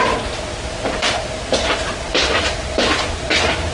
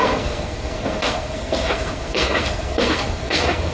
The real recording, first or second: first